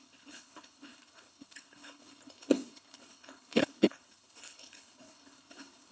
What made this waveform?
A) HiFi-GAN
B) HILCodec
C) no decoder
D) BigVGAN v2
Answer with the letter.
B